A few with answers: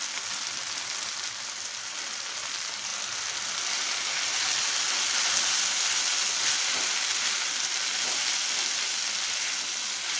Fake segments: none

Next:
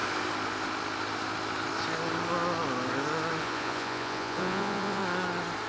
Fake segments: 3.4-5.0 (vocoder, Vocos)

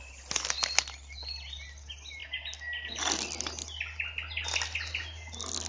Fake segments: none

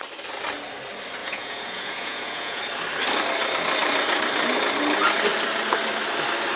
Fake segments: 1.2-2.6 (vocoder, Vocos)

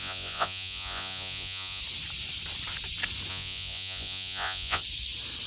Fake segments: 0.0-1.8 (vocoder, Vocos); 3.3-4.8

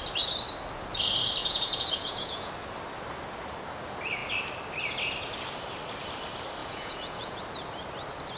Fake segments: 1.4-2.5 (vocoder, Vocos); 6.6-7.4

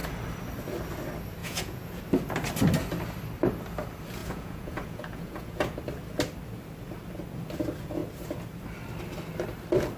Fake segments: 1.4-2.0 (vocoder, Vocos); 4.2-5.8

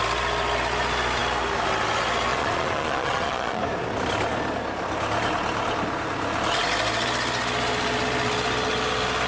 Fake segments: 2.3-3.6 (vocoder, Vocos)